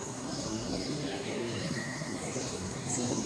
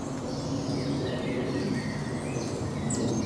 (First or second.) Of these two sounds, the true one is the second